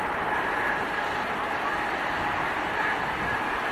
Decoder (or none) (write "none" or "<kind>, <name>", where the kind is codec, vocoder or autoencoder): none